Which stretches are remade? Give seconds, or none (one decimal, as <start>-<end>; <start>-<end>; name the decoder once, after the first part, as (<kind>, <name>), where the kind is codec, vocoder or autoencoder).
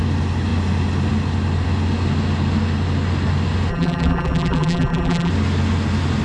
3.7-5.3 (vocoder, BigVGAN v2)